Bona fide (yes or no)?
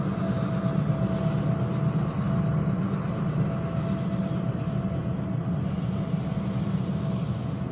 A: yes